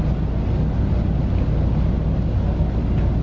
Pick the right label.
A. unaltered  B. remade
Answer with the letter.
A